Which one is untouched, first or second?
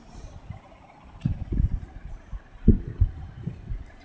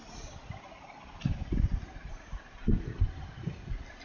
second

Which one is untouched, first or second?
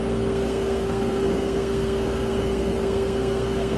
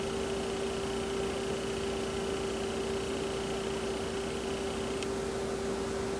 second